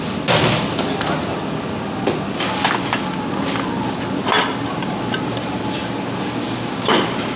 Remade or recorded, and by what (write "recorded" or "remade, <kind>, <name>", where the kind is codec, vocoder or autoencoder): recorded